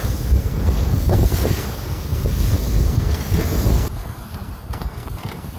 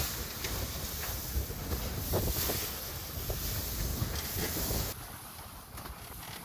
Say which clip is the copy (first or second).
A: first